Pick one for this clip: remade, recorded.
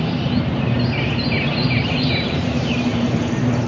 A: remade